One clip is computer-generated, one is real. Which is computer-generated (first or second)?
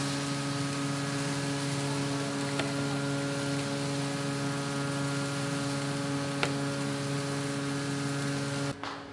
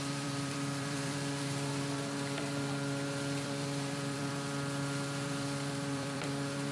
second